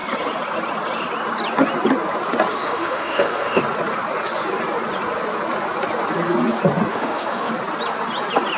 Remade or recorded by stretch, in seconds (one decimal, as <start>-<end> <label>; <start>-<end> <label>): 0.0-2.5 recorded; 2.5-3.6 remade; 3.6-6.9 recorded; 6.9-7.5 remade; 7.5-8.6 recorded